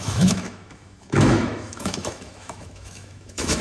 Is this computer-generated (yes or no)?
yes